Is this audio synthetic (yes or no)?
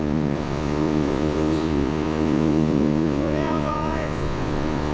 yes